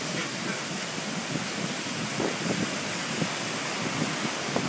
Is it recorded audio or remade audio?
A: recorded